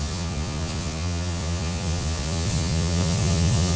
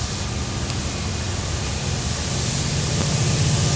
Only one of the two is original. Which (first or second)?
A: second